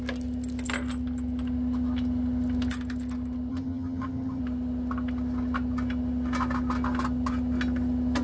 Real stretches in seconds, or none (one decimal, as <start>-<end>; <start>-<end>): 0.0-3.5; 4.4-8.2